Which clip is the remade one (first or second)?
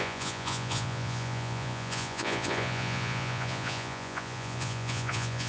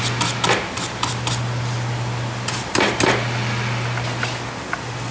first